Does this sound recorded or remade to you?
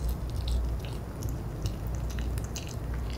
recorded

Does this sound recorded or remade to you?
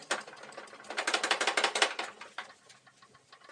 recorded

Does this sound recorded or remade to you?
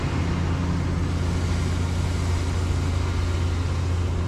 recorded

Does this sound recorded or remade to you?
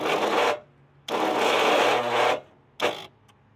recorded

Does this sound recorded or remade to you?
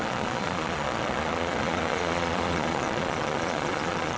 remade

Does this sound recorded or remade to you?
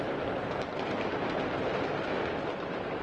recorded